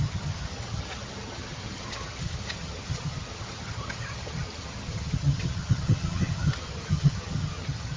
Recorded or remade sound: remade